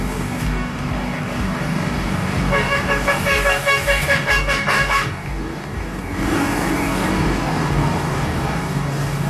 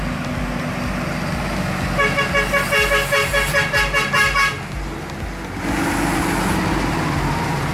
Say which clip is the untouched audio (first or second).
second